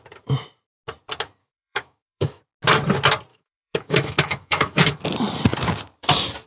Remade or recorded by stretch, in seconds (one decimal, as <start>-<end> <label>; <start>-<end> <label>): 0.0-1.4 recorded; 1.4-2.4 remade; 2.4-3.3 recorded; 3.3-5.0 remade; 5.0-6.5 recorded

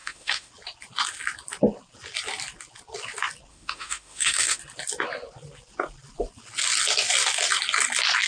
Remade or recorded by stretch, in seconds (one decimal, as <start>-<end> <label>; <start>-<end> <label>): 0.0-0.5 remade; 0.5-3.5 recorded; 3.5-4.6 remade; 4.6-8.3 recorded

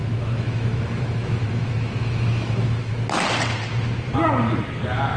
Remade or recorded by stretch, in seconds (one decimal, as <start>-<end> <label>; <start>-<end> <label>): 0.0-2.9 remade; 2.9-5.2 recorded